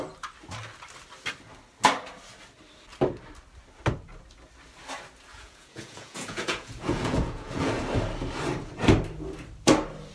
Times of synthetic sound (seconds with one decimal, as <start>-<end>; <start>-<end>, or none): 5.3-7.7